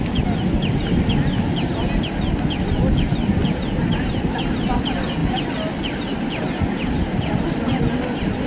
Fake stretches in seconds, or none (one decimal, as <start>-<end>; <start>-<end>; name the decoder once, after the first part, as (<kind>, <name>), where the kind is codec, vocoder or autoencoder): none